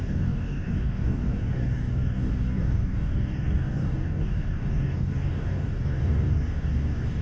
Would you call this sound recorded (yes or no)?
no